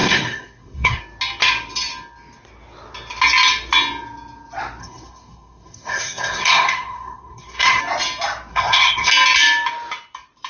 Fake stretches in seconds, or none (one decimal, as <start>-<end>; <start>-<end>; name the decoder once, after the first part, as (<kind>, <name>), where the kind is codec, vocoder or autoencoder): 0.0-1.0 (codec, SNAC); 4.8-7.8; 8.5-9.1